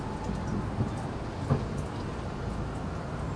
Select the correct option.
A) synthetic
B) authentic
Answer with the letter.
B